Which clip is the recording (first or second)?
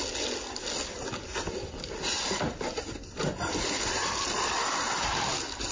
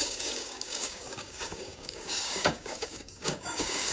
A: first